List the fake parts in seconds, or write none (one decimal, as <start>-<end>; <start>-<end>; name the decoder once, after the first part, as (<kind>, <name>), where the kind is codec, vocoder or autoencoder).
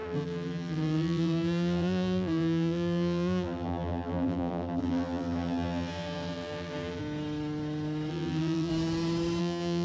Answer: 0.0-7.0 (vocoder, BigVGAN v2); 8.1-8.7; 9.4-9.8